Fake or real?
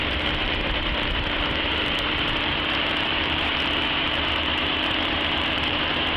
fake